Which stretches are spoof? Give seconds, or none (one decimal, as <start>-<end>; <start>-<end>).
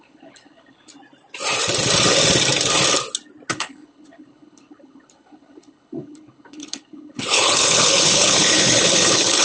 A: 0.0-0.9; 3.5-9.4